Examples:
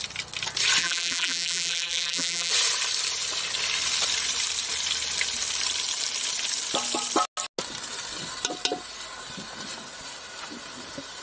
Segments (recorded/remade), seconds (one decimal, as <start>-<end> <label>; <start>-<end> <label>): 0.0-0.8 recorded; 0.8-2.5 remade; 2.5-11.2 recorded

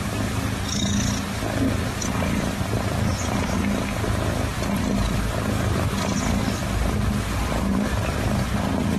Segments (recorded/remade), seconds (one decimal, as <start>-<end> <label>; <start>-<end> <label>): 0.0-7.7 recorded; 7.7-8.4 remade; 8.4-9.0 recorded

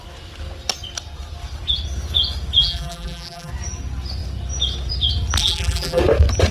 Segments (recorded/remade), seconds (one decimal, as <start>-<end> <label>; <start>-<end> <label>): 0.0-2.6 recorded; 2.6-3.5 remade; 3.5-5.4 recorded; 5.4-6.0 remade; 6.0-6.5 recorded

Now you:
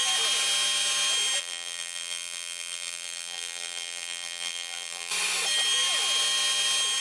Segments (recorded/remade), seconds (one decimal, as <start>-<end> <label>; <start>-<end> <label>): 0.0-1.4 recorded; 1.4-5.1 remade; 5.1-7.0 recorded

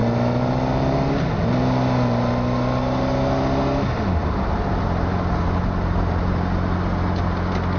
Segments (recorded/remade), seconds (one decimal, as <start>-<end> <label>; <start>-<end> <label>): 0.0-7.8 recorded